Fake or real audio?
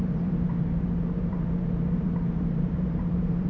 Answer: fake